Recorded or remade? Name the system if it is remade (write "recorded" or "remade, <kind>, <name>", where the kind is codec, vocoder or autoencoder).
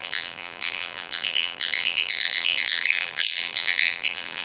remade, vocoder, BigVGAN v2